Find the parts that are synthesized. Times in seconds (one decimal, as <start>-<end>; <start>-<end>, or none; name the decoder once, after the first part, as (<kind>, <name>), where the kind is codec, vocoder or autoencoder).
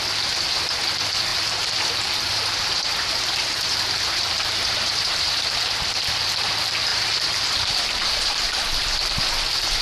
1.3-5.5 (vocoder, BigVGAN v2); 6.9-9.0